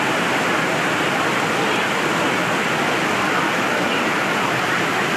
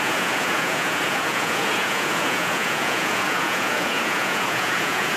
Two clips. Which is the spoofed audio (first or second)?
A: second